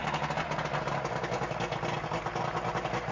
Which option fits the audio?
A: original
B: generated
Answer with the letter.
A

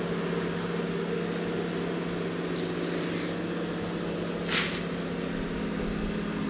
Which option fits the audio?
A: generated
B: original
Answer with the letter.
B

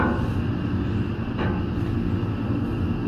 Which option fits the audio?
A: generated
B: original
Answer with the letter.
B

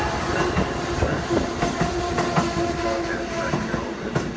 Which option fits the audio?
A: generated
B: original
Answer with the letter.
B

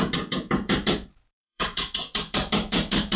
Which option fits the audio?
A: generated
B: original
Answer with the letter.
A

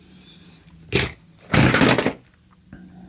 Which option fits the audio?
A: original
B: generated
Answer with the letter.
A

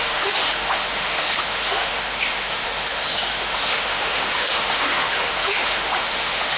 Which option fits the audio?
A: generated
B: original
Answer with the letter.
A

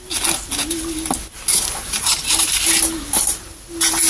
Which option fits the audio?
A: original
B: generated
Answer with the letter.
A